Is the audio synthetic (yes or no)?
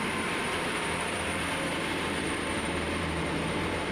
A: yes